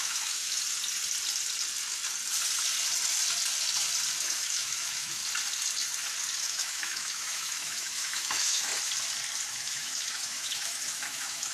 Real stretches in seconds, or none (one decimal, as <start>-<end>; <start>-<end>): 0.6-4.2; 5.2-6.4; 8.7-9.5